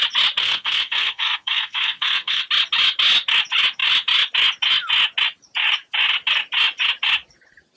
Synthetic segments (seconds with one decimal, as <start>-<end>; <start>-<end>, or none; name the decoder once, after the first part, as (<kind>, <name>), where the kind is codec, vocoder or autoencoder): 0.4-2.4 (codec, SNAC)